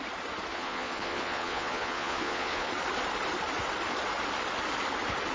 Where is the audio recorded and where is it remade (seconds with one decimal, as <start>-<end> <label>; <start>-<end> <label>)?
0.0-0.5 recorded; 0.5-2.7 remade; 2.7-5.3 recorded